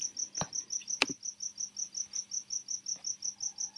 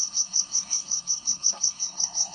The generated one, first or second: second